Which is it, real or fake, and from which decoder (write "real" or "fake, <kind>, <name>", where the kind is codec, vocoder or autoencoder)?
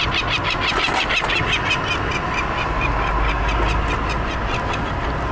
real